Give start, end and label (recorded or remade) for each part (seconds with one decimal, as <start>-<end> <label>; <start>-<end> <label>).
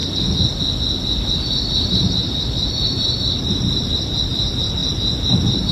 0.0-1.9 recorded; 1.9-4.8 remade; 4.8-5.7 recorded